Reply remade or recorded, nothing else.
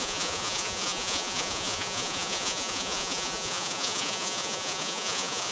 remade